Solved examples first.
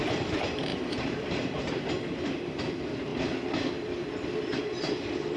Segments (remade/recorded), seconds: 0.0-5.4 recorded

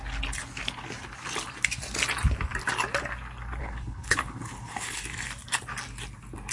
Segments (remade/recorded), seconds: 0.0-3.6 recorded; 3.6-5.0 remade; 5.0-6.5 recorded

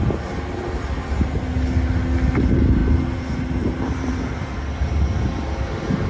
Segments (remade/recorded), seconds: 0.0-6.1 recorded